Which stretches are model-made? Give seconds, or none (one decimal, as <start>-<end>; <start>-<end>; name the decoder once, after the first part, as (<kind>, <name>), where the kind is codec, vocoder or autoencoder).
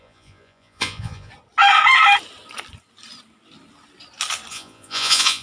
0.0-1.3 (vocoder, Vocos); 4.5-5.4